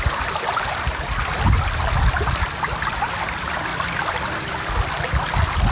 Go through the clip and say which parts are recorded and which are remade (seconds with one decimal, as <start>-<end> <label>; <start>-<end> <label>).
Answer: 0.0-5.7 recorded